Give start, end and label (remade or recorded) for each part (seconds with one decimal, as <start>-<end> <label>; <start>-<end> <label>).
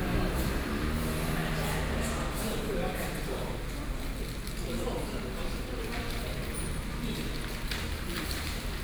0.0-1.4 remade; 1.4-5.6 recorded; 5.6-6.5 remade; 6.5-8.1 recorded; 8.1-8.8 remade